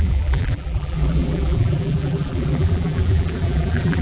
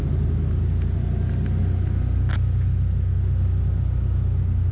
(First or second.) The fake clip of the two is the first